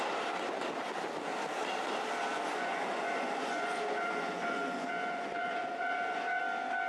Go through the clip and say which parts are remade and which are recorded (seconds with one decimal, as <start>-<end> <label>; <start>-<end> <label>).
0.0-2.3 recorded; 2.3-6.4 remade; 6.4-6.9 recorded